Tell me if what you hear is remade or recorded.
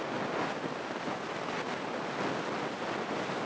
recorded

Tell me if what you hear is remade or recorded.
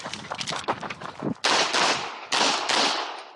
recorded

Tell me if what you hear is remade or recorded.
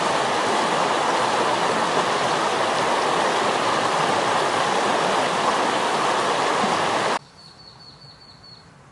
recorded